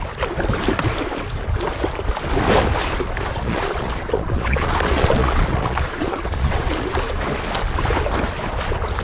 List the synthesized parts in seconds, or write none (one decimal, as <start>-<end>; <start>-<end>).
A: 3.3-7.2